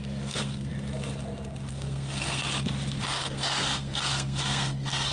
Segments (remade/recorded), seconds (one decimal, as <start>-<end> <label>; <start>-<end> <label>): 0.0-0.7 remade; 0.7-1.7 recorded; 1.7-2.4 remade; 2.4-3.2 recorded; 3.2-5.1 remade